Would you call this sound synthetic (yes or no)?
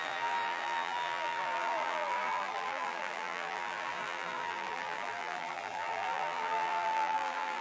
yes